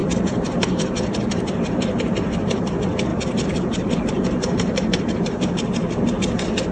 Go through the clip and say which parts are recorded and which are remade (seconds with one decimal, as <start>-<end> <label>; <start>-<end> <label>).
0.0-2.6 remade; 2.6-3.1 recorded; 3.1-6.1 remade; 6.1-6.7 recorded